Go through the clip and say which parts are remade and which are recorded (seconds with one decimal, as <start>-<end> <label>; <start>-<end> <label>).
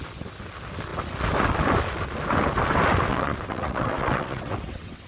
0.0-3.1 recorded; 3.1-5.1 remade